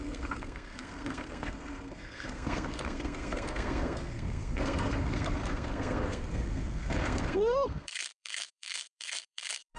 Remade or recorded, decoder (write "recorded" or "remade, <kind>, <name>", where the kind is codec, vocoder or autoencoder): remade, codec, SNAC